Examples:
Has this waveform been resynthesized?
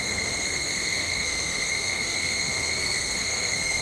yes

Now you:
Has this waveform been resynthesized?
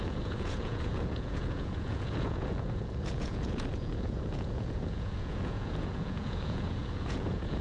yes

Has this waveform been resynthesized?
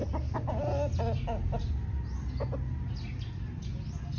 no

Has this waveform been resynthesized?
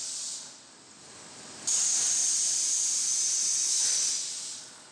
no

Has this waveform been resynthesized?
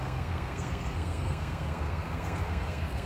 yes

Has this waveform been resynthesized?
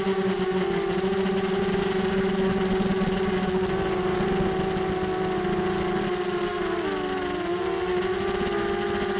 no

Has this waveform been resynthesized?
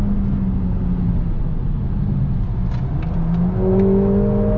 no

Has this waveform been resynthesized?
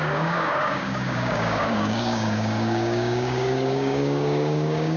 yes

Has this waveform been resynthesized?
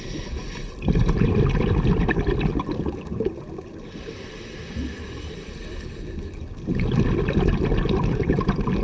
no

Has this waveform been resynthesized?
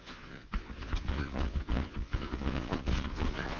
yes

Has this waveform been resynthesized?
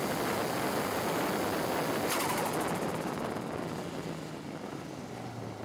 no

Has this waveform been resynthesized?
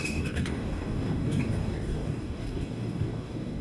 yes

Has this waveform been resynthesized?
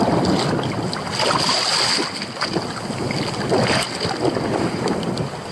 no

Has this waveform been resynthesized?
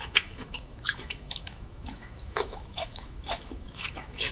yes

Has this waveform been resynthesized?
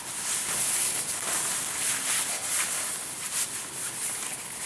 no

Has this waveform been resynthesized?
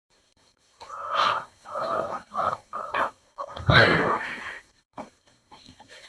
yes